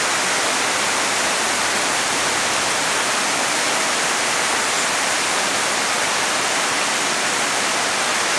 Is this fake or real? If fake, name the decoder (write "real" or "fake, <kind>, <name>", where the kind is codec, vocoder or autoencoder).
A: real